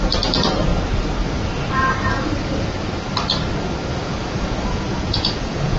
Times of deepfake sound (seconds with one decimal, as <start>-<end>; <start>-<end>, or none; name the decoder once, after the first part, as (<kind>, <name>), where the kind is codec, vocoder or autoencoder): 3.9-5.8 (vocoder, Vocos)